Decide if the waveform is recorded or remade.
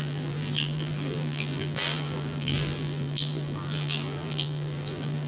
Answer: remade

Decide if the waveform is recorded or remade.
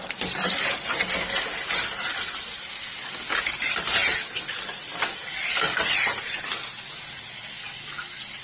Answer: recorded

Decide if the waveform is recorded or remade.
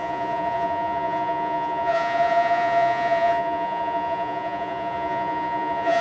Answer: remade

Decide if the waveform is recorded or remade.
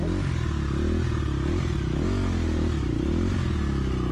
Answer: recorded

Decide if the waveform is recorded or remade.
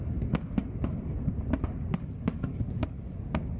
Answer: recorded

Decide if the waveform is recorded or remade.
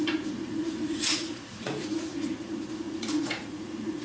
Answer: remade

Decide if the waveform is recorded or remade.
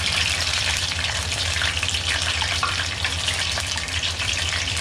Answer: remade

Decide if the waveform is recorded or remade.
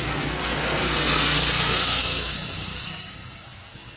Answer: remade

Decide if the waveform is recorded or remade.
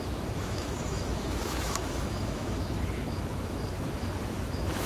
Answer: remade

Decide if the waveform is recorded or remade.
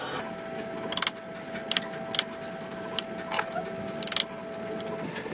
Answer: recorded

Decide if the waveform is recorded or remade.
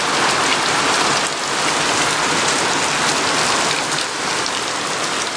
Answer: recorded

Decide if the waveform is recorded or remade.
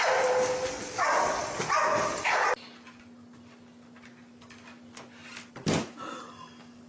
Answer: recorded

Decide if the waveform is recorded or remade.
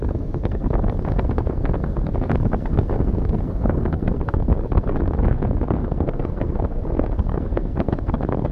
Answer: remade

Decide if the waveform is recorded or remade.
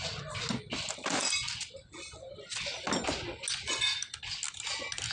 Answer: recorded